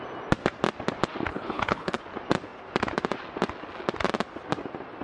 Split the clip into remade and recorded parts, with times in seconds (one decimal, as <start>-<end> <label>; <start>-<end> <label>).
0.0-1.3 recorded; 1.3-2.0 remade; 2.0-5.0 recorded